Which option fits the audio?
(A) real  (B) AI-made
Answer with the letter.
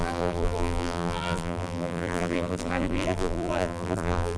B